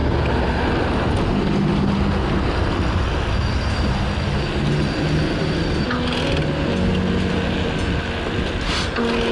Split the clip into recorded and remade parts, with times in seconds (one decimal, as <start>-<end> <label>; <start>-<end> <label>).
0.0-9.3 recorded